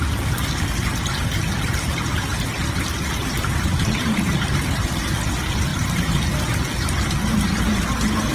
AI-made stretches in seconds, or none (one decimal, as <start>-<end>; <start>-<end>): 1.7-4.3